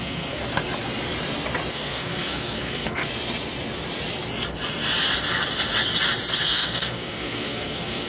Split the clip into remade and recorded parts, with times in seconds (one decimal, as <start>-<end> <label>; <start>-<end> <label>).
0.0-0.4 remade; 0.4-1.7 recorded; 1.7-3.0 remade; 3.0-6.4 recorded; 6.4-8.1 remade